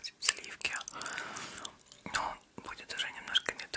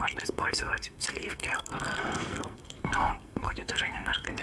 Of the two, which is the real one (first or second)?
first